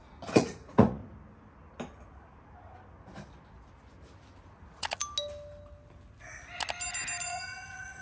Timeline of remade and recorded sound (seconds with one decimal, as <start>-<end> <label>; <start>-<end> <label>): 0.0-1.0 remade; 1.0-4.5 recorded; 4.5-5.0 remade; 5.0-7.2 recorded; 7.2-8.0 remade